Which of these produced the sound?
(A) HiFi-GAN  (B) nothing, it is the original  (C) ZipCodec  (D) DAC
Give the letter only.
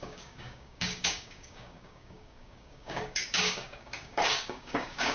D